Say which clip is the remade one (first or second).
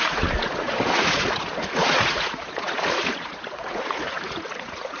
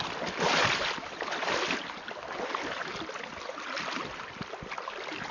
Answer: first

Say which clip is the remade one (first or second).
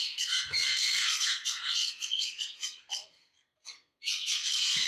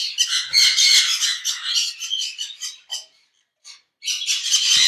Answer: first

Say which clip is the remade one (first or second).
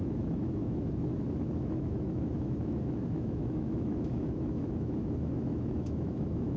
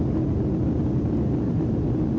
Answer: first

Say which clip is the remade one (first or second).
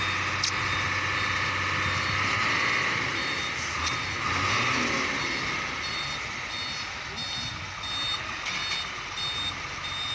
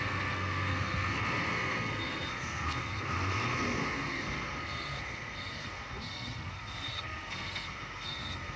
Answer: second